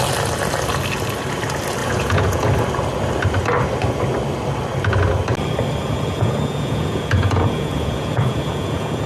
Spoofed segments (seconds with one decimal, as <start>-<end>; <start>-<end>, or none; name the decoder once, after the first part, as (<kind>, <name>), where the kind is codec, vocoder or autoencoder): 1.8-2.5 (vocoder, Vocos); 5.8-9.1